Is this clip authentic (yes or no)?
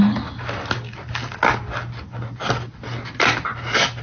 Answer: yes